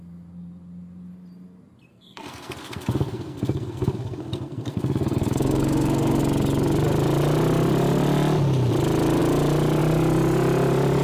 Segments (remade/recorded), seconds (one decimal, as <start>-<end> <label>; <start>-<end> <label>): 0.0-1.9 recorded; 1.9-6.2 remade; 6.2-11.0 recorded

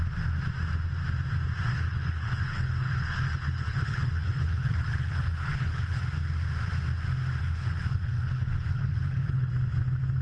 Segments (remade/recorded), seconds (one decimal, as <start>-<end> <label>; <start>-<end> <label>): 0.0-1.7 recorded; 1.7-6.0 remade; 6.0-7.4 recorded; 7.4-9.5 remade; 9.5-10.2 recorded

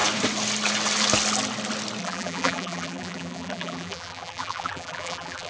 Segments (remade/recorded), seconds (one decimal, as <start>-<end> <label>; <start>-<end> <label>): 0.0-2.0 recorded; 2.0-5.5 remade

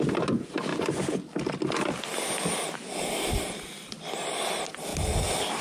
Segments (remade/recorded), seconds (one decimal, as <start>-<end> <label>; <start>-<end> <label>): 0.0-5.6 recorded

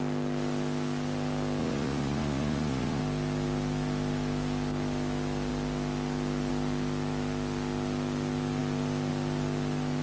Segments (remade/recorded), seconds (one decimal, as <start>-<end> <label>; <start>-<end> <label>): 0.0-1.6 recorded; 1.6-3.0 remade; 3.0-10.0 recorded

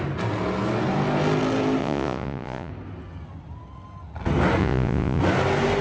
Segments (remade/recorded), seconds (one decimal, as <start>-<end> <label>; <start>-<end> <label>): 0.0-1.8 recorded; 1.8-2.7 remade; 2.7-4.6 recorded; 4.6-5.2 remade; 5.2-5.8 recorded